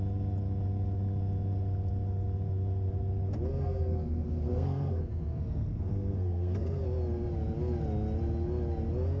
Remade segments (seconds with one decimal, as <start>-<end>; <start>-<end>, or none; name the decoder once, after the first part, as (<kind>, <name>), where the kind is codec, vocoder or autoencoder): 3.5-6.8 (codec, SNAC)